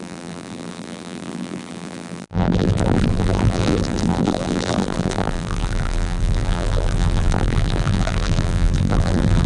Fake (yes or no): yes